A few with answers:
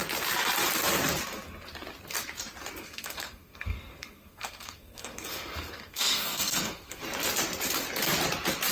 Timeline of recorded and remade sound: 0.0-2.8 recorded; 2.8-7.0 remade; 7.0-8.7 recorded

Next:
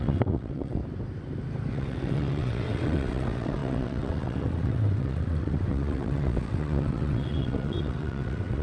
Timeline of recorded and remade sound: 0.0-0.8 remade; 0.8-1.7 recorded; 1.7-8.6 remade

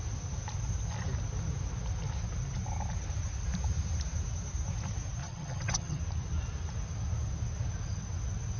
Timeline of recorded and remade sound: 0.0-5.2 recorded; 5.2-6.0 remade; 6.0-8.6 recorded

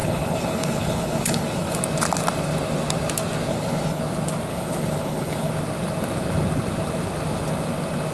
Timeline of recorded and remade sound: 0.0-1.8 remade; 1.8-3.5 recorded; 3.5-4.0 remade; 4.0-4.5 recorded; 4.5-5.5 remade; 5.5-8.1 recorded

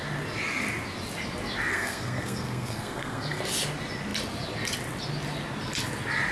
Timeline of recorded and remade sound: 0.0-1.7 recorded; 1.7-3.4 remade; 3.4-6.3 recorded